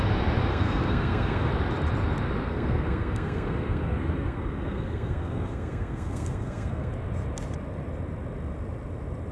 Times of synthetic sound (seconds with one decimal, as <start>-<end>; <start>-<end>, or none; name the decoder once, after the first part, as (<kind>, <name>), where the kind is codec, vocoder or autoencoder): 0.5-1.5 (codec, SNAC); 2.5-6.9